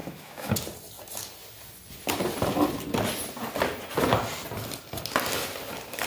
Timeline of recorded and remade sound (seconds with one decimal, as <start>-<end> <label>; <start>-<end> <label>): 0.0-0.5 remade; 0.5-6.1 recorded

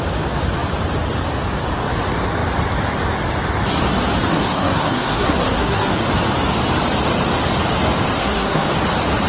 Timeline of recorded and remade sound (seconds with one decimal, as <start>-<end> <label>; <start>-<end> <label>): 0.0-4.3 recorded; 4.3-5.9 remade; 5.9-8.2 recorded; 8.2-8.7 remade; 8.7-9.3 recorded

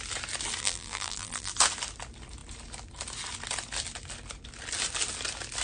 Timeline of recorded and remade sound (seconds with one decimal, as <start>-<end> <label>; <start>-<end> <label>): 0.0-0.6 recorded; 0.6-1.5 remade; 1.5-5.6 recorded